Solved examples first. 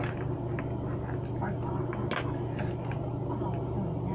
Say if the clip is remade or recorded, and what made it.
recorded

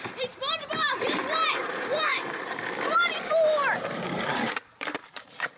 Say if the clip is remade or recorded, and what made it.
remade, vocoder, BigVGAN v2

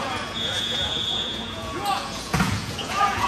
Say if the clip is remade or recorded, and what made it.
remade, vocoder, Vocos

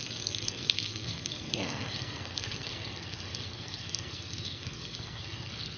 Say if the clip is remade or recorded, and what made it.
remade, codec, SNAC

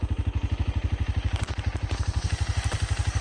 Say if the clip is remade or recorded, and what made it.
recorded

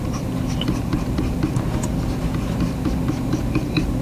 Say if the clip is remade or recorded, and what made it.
recorded